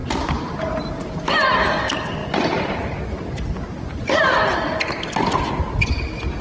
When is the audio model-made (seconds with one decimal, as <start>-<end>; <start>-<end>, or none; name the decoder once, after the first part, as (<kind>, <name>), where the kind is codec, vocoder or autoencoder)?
none